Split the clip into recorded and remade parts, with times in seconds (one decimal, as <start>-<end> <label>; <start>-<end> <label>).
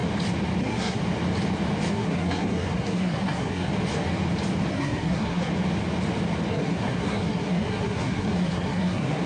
0.0-0.6 recorded; 0.6-1.0 remade; 1.0-1.9 recorded; 1.9-3.7 remade; 3.7-4.7 recorded; 4.7-5.5 remade; 5.5-6.5 recorded; 6.5-9.3 remade